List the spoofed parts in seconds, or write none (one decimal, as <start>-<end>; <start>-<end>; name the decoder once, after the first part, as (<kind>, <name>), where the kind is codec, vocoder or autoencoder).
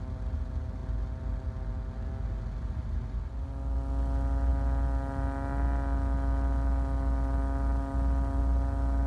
none